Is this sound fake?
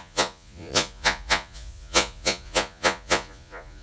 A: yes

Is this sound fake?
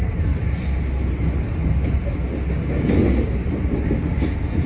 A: no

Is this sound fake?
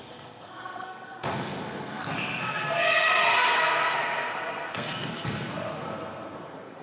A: yes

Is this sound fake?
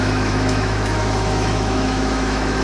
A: yes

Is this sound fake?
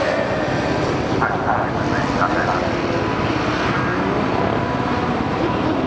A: no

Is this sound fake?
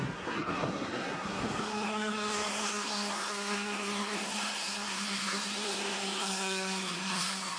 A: yes